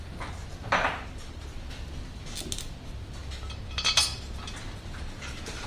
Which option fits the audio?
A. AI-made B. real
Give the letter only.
B